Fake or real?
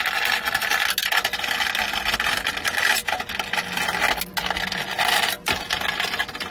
real